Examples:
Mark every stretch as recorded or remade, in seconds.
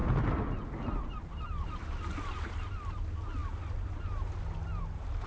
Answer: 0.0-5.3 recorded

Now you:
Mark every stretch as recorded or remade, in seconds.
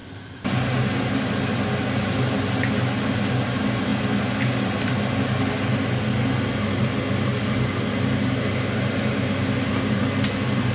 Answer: 0.0-10.7 recorded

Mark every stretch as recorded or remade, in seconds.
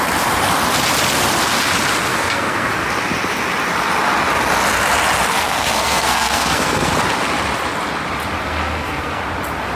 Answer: 0.0-2.1 recorded; 2.1-2.7 remade; 2.7-5.3 recorded; 5.3-6.9 remade; 6.9-8.4 recorded; 8.4-9.2 remade; 9.2-9.8 recorded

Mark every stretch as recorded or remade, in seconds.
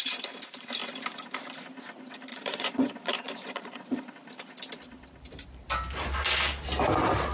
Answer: 0.0-2.3 recorded; 2.3-4.1 remade; 4.1-7.3 recorded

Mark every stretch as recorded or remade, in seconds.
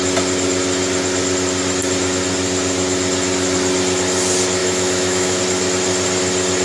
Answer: 0.0-4.6 recorded; 4.6-5.4 remade; 5.4-6.6 recorded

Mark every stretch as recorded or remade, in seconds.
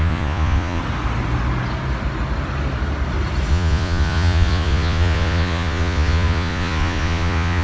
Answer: 0.0-0.8 remade; 0.8-3.5 recorded; 3.5-7.6 remade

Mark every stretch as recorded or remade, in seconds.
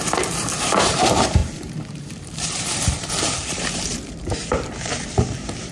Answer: 0.0-5.7 remade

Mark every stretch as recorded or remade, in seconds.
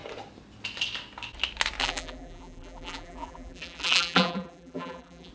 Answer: 0.0-1.8 recorded; 1.8-5.3 remade